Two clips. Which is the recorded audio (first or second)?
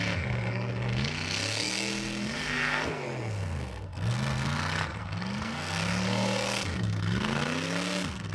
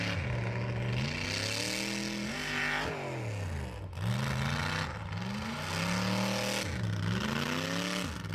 second